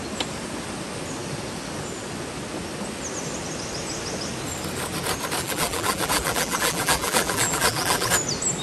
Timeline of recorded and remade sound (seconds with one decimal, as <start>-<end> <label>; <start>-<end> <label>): 0.0-5.4 recorded; 5.4-8.1 remade; 8.1-8.6 recorded